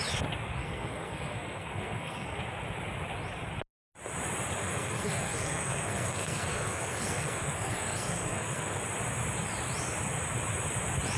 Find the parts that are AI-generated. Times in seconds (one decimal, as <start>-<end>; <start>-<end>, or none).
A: 0.6-2.4; 4.6-8.8